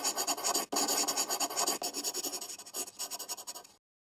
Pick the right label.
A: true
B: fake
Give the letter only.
A